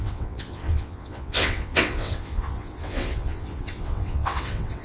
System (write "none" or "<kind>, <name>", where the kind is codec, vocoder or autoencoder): vocoder, WaveNeXt